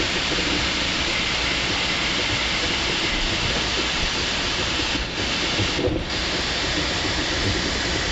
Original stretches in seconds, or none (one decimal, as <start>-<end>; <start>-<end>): 0.0-8.1